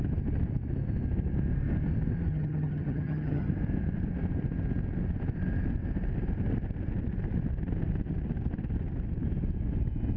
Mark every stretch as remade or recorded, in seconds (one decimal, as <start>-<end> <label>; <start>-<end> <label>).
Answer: 0.0-2.3 recorded; 2.3-3.5 remade; 3.5-10.2 recorded